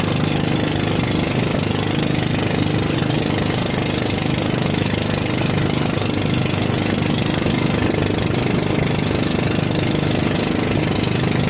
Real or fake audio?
real